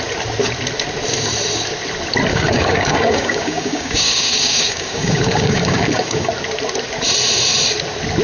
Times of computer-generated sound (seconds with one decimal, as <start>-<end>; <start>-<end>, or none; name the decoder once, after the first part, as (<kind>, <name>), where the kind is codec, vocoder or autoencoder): 2.3-6.3 (codec, DAC)